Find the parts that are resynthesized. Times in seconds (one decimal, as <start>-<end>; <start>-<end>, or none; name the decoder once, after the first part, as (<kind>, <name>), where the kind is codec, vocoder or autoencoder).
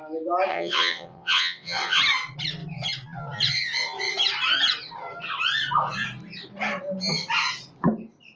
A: 0.5-2.0 (vocoder, WaveNeXt)